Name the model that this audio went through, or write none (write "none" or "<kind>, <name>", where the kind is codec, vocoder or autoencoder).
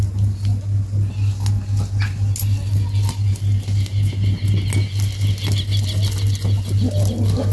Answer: none